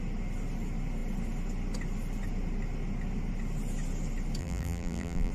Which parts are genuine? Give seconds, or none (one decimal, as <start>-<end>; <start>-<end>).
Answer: 0.0-4.4